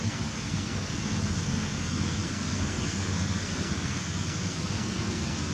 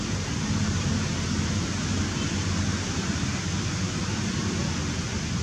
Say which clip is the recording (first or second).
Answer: second